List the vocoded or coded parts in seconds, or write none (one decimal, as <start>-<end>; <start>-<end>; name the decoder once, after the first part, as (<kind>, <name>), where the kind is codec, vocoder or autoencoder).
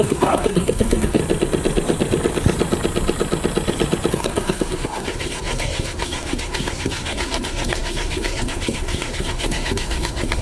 0.0-1.2 (codec, SNAC); 4.1-10.4